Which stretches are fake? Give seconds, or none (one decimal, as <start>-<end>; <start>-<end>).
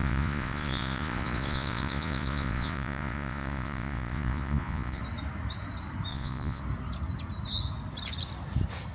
0.0-5.0; 6.1-6.6